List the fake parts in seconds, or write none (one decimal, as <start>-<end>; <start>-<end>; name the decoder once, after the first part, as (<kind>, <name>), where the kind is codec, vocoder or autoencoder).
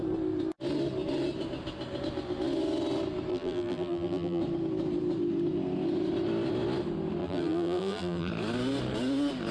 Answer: 3.3-4.4 (vocoder, BigVGAN v2); 7.2-8.3